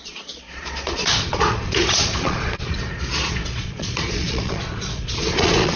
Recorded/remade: remade